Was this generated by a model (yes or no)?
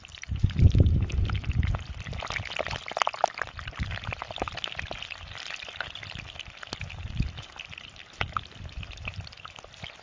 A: no